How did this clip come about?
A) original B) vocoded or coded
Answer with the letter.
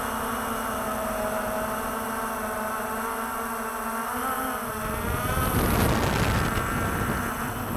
A